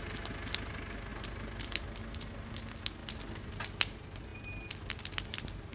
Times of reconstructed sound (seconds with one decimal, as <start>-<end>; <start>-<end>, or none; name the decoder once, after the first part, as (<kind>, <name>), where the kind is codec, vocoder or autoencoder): none